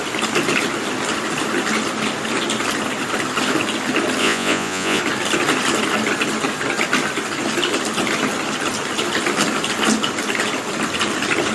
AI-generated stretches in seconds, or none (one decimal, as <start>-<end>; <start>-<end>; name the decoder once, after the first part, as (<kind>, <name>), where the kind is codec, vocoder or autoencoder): 4.2-5.0 (vocoder, Vocos)

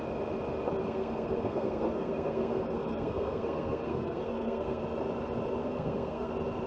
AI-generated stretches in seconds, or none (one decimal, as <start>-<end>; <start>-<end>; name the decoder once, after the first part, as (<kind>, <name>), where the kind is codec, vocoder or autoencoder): 0.8-4.8 (codec, SNAC); 5.6-6.3

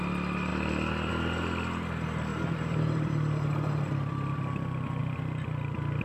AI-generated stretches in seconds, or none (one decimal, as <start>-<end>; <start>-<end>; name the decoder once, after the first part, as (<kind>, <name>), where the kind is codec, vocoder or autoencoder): 2.3-3.9 (vocoder, BigVGAN v2)

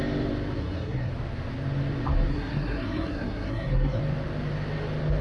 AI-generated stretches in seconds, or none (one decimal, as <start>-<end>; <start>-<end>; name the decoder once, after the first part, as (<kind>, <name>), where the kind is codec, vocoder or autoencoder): 0.6-1.1 (codec, SNAC); 2.3-4.0

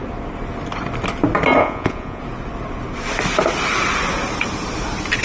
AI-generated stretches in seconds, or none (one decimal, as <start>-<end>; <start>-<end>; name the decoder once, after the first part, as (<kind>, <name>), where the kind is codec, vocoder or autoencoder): 1.6-2.2 (vocoder, Vocos)